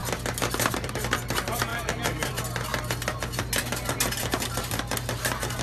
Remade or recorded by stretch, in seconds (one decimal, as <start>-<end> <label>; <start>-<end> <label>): 0.0-5.6 recorded